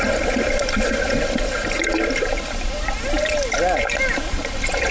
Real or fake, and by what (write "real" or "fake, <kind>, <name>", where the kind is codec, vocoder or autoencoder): real